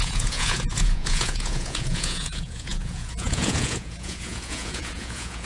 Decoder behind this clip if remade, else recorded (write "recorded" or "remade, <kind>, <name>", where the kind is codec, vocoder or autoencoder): remade, vocoder, Vocos